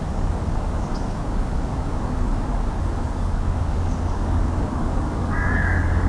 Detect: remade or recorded remade